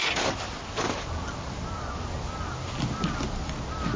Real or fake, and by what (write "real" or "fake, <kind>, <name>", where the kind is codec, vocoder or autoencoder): real